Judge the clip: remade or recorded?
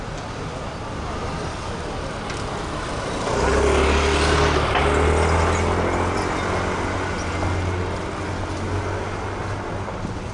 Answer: recorded